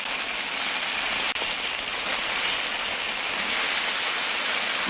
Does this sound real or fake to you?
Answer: real